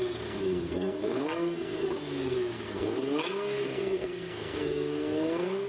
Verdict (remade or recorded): remade